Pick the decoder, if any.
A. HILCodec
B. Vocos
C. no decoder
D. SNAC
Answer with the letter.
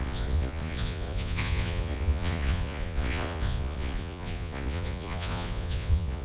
B